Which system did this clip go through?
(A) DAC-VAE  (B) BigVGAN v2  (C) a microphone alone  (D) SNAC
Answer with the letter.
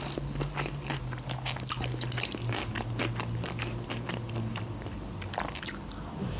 B